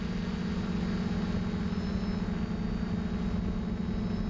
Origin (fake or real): real